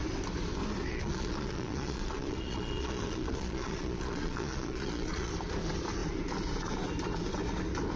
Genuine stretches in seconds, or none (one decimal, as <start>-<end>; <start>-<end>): 0.0-0.9; 5.3-8.0